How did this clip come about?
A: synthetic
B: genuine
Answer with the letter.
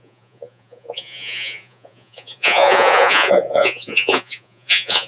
A